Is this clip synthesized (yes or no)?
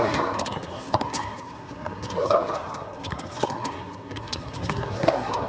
yes